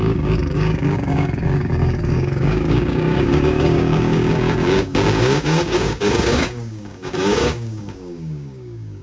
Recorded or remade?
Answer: remade